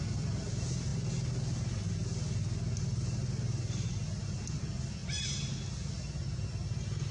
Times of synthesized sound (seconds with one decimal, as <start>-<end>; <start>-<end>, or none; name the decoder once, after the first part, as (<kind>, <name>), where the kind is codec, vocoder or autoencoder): none